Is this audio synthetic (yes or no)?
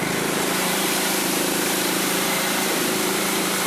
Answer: yes